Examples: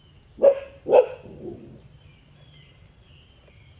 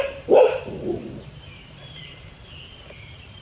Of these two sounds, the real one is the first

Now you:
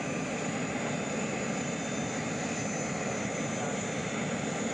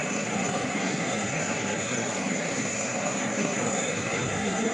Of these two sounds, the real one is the first